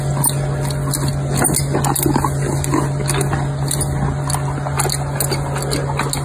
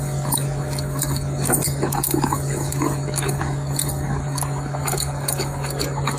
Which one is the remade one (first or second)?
second